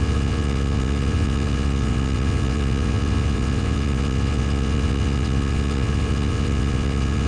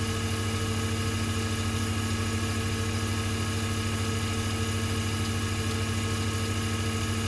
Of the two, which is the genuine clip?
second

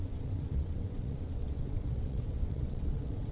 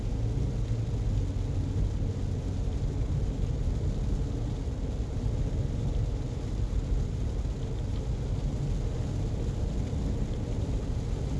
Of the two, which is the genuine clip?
second